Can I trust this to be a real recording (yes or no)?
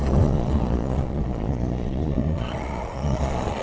no